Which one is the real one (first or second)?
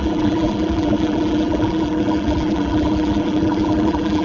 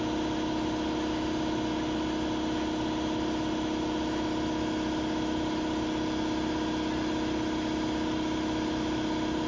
second